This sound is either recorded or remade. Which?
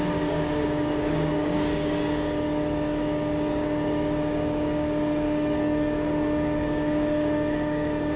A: remade